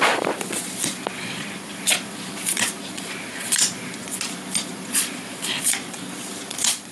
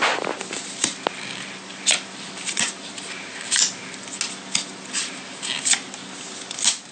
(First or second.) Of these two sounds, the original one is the second